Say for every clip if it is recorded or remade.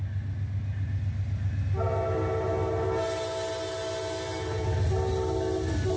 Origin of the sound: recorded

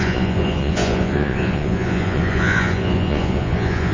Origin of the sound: remade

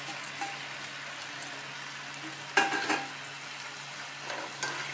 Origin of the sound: recorded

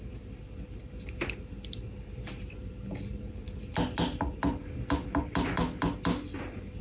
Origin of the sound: recorded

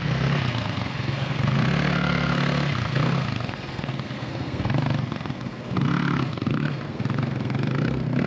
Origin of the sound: remade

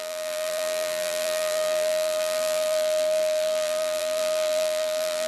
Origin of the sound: remade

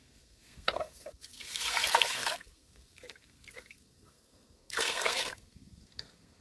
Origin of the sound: remade